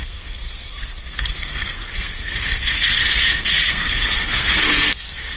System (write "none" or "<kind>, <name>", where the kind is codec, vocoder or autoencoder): codec, SNAC